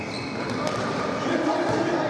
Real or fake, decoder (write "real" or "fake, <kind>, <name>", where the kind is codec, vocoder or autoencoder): real